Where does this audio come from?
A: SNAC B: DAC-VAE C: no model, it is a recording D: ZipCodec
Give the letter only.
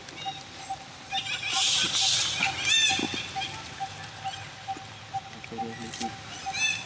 C